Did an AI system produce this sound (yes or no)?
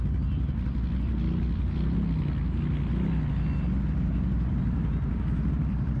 no